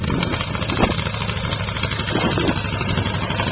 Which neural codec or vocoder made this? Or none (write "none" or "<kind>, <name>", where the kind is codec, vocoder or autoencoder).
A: none